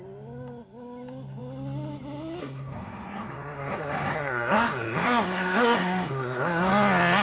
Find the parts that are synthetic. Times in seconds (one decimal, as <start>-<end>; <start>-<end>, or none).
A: 2.4-6.7